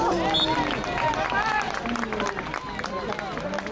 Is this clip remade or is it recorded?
recorded